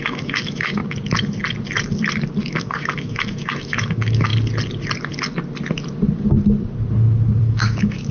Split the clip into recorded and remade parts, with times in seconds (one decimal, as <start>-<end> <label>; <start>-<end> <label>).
0.0-0.8 remade; 0.8-2.4 recorded; 2.4-4.3 remade; 4.3-7.4 recorded; 7.4-8.1 remade